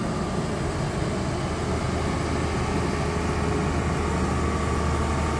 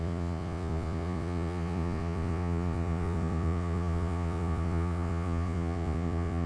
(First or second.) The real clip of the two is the first